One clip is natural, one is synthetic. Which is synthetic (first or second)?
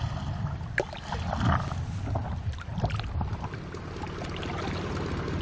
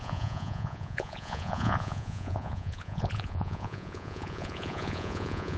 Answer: second